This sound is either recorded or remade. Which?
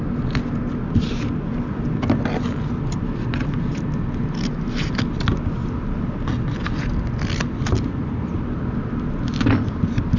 recorded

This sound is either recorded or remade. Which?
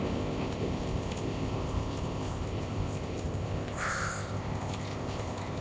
remade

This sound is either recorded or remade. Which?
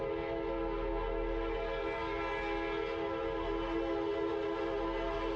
recorded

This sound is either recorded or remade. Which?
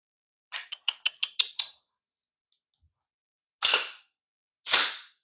recorded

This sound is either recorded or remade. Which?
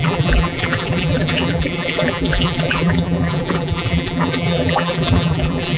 remade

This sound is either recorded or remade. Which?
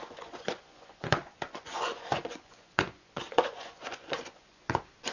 remade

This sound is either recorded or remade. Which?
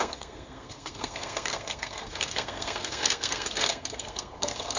remade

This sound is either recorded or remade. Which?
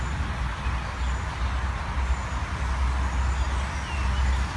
recorded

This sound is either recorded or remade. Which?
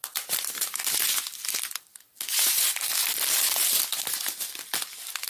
recorded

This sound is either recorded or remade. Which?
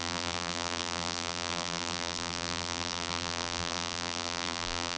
remade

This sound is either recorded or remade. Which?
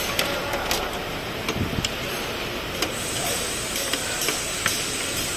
recorded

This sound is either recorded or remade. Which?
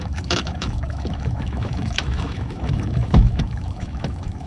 remade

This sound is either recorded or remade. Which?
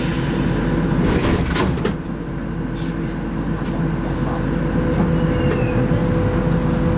recorded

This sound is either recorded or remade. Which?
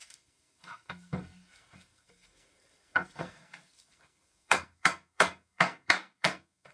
remade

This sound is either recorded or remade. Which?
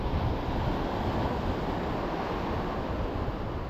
recorded